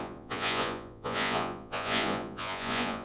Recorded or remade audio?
remade